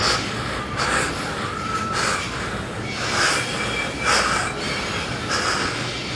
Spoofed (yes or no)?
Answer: no